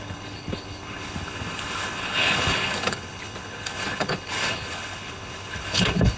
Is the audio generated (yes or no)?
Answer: yes